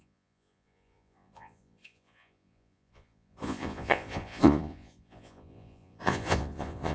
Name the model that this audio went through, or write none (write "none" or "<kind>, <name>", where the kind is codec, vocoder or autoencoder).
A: vocoder, Vocos